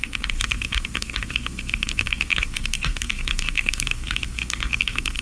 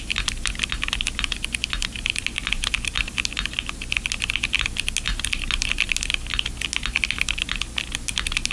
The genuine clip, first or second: second